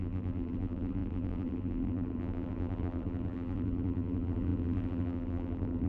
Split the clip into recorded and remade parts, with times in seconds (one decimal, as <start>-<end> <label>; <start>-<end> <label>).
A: 0.0-5.9 remade